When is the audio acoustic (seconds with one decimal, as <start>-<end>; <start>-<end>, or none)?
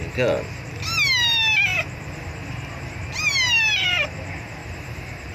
0.0-5.3